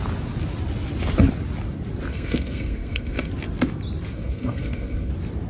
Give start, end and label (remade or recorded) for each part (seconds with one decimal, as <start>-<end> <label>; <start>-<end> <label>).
0.0-2.1 recorded; 2.1-3.3 remade; 3.3-4.1 recorded; 4.1-5.1 remade; 5.1-5.5 recorded